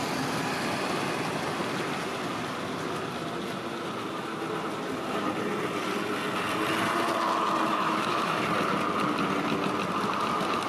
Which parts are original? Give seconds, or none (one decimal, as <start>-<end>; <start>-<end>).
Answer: 0.0-7.7; 8.4-10.7